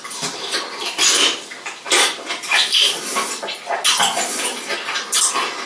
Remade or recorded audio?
recorded